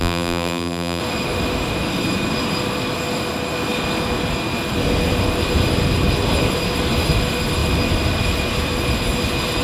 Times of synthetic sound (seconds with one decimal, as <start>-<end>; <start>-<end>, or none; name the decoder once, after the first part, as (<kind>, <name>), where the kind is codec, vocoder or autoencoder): 0.0-1.0 (vocoder, BigVGAN v2)